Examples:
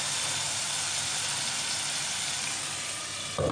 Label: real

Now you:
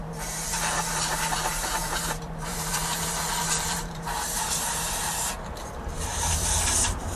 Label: fake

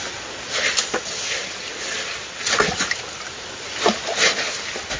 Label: real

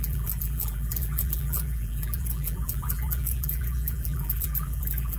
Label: fake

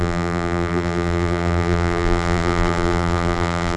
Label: fake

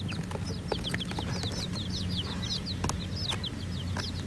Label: real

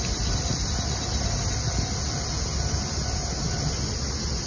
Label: real